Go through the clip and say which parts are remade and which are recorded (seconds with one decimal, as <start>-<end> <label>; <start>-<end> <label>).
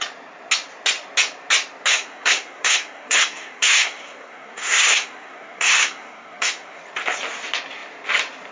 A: 0.0-1.9 recorded; 1.9-6.8 remade; 6.8-8.5 recorded